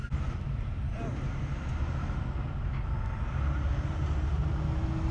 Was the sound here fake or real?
real